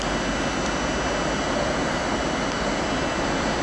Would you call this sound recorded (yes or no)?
yes